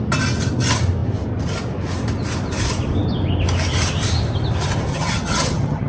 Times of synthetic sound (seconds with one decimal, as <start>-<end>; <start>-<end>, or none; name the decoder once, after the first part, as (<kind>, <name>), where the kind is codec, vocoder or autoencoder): 4.9-5.9 (vocoder, HiFi-GAN)